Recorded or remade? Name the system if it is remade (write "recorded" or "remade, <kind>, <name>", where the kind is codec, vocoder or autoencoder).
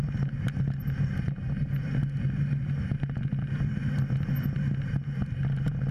recorded